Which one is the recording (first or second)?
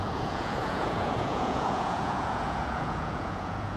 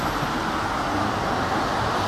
second